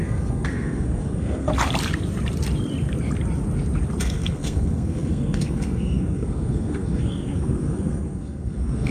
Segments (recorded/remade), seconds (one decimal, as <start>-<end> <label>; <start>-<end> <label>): 0.0-1.5 remade; 1.5-4.0 recorded; 4.0-8.9 remade